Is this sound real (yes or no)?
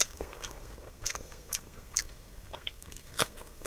no